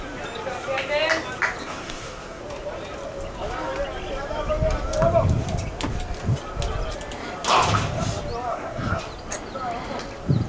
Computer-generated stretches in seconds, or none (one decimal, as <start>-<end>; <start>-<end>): 1.6-2.4; 8.5-9.0